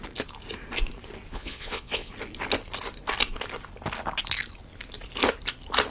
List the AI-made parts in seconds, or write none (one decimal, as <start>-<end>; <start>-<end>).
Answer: 1.3-2.1